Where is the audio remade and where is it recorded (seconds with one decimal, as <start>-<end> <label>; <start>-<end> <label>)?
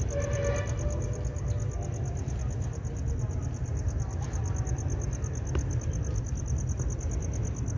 0.0-7.8 recorded